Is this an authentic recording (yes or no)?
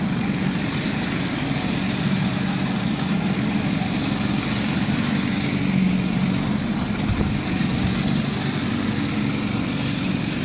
yes